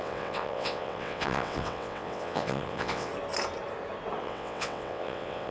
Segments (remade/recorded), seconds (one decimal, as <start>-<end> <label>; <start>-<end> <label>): 0.0-3.1 remade; 3.1-4.2 recorded; 4.2-5.5 remade